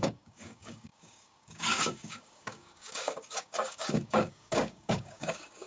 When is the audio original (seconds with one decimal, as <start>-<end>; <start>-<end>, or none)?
none